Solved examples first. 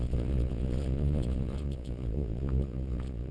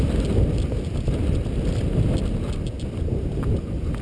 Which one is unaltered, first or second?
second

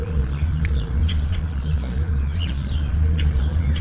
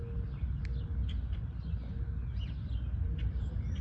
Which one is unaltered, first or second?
second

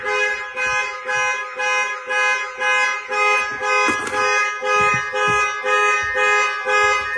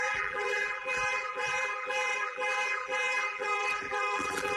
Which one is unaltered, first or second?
first